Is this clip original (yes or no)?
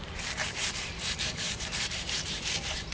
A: no